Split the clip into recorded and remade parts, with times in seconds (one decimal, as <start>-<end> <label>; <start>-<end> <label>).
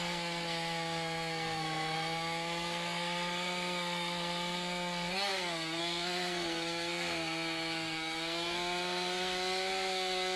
0.0-10.4 remade